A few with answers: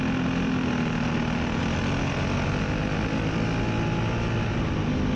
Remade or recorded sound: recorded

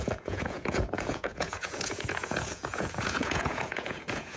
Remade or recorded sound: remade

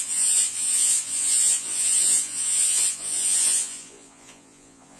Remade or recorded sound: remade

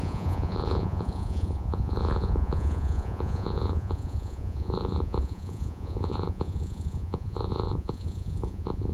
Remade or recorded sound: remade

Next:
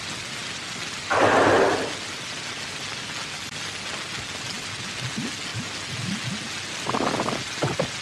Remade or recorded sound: recorded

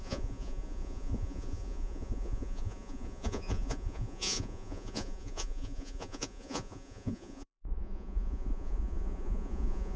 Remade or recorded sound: remade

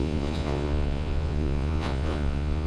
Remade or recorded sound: remade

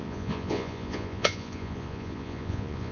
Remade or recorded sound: remade